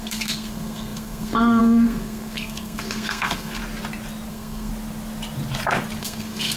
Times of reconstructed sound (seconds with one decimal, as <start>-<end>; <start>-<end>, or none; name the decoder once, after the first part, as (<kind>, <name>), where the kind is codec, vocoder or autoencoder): 0.0-3.6 (codec, SNAC); 4.3-4.7; 6.0-6.6